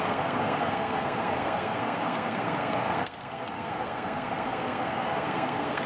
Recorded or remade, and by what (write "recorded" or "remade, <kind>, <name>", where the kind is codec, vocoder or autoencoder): remade, codec, SNAC